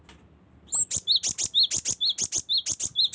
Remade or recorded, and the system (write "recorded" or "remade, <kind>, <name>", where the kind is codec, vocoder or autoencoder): recorded